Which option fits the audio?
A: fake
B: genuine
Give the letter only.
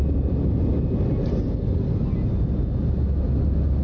B